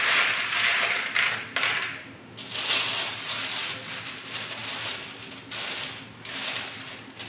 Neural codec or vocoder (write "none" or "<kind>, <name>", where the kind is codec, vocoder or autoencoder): none